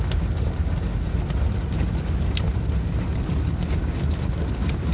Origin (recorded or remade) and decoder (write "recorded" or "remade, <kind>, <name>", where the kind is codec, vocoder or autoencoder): recorded